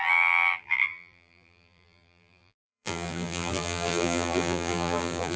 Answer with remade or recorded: remade